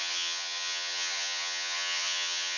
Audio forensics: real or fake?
fake